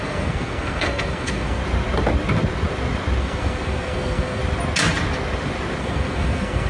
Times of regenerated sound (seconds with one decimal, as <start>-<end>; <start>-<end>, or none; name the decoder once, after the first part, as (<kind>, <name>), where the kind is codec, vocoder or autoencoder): 0.0-1.6 (codec, SNAC); 3.2-4.4; 5.8-6.7